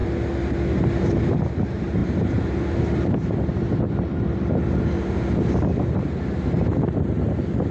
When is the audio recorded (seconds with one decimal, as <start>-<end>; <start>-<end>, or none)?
0.0-7.7

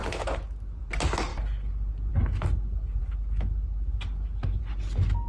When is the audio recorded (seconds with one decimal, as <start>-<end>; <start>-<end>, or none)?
0.0-5.3

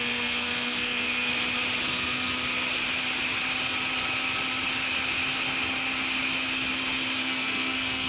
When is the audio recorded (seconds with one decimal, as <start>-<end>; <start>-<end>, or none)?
1.3-1.9; 2.3-7.2

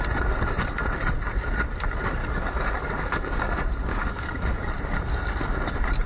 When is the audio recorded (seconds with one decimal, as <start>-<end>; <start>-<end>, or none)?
0.0-2.2; 3.5-3.9; 4.7-6.1

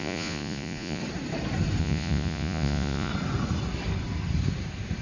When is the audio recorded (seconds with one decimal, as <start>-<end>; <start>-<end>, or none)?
1.0-1.8; 3.1-5.0

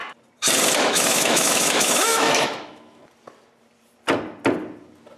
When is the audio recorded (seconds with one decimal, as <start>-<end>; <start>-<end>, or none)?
0.0-0.8; 3.0-5.2

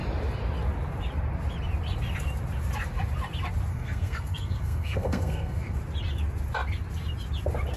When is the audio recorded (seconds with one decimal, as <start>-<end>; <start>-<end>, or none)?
0.0-3.7; 5.8-7.8

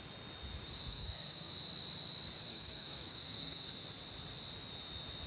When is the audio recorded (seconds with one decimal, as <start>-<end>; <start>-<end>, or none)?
0.0-0.8; 1.5-2.5; 3.7-5.3